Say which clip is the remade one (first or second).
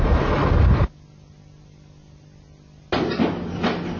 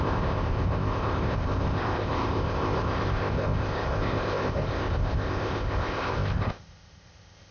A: second